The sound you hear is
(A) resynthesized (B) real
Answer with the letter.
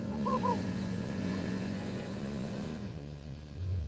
A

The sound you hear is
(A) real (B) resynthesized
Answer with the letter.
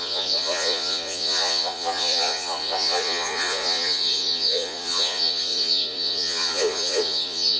B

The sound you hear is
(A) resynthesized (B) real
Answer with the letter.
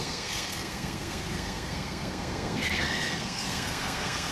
A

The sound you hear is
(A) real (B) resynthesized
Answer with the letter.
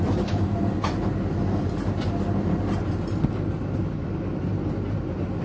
A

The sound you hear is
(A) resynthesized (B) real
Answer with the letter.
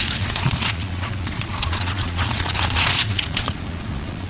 A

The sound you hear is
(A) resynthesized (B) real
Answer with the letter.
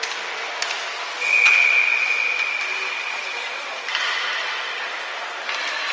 B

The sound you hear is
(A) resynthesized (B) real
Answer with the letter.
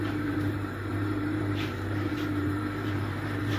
A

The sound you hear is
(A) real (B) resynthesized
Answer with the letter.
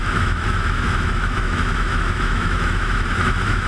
B